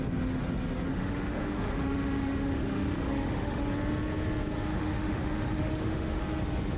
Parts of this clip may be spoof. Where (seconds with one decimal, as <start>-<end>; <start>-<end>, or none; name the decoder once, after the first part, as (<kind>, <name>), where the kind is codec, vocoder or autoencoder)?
0.9-3.6 (autoencoder, DAC-VAE); 4.7-6.2